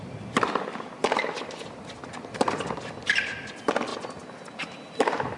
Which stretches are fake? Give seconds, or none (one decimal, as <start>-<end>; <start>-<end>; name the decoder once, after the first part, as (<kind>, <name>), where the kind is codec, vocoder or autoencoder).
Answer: none